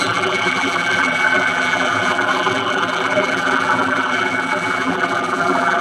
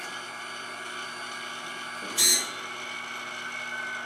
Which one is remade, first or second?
first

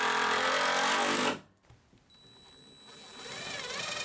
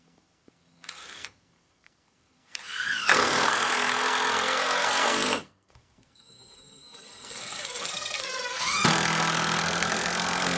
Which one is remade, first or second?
second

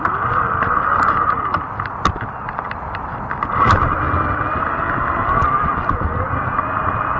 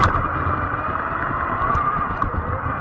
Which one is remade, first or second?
second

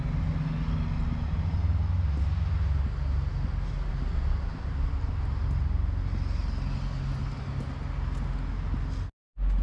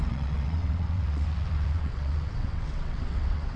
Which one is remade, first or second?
second